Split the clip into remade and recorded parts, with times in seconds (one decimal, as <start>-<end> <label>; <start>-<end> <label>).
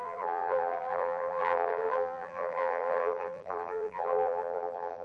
0.0-5.0 remade